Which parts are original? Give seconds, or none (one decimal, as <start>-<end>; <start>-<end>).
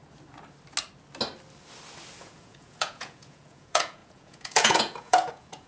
0.0-2.2